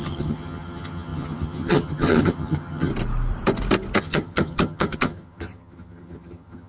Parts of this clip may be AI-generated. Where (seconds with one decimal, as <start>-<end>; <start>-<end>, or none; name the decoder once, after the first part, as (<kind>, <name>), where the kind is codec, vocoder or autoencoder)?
0.0-2.9 (vocoder, HiFi-GAN); 4.0-6.7